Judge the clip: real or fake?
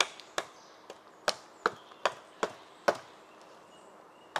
real